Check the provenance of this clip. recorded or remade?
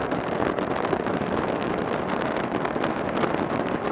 recorded